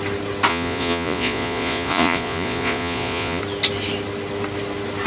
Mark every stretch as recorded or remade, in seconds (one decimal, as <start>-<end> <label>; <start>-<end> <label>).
0.0-0.5 recorded; 0.5-3.4 remade; 3.4-5.1 recorded